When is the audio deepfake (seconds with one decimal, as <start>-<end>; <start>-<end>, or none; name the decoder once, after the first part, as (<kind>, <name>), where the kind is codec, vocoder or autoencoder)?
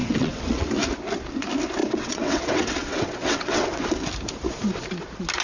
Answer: 0.0-0.7 (vocoder, WaveNeXt); 1.8-4.0